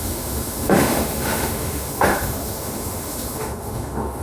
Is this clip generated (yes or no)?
yes